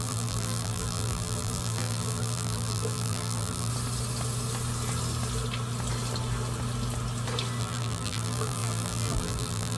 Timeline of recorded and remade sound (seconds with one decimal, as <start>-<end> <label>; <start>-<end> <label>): 0.0-3.7 remade; 3.7-7.6 recorded; 7.6-9.8 remade

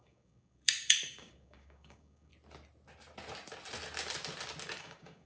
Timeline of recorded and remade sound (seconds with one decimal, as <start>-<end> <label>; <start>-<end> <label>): 0.0-2.3 remade; 2.3-4.8 recorded; 4.8-5.3 remade